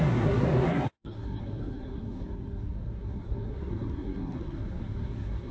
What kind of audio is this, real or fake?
fake